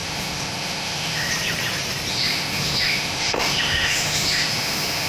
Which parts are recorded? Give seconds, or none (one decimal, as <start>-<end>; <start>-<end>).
1.3-2.1